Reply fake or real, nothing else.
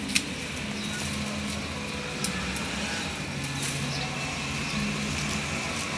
real